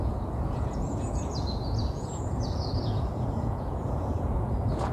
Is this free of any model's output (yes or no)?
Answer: no